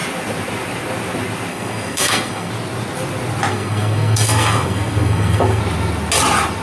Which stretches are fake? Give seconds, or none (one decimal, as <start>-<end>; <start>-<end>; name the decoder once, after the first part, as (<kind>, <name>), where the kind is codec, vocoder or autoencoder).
1.5-2.5 (codec, SNAC); 3.5-5.6